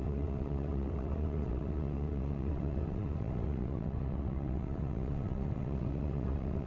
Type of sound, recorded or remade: remade